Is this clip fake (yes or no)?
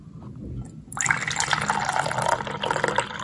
no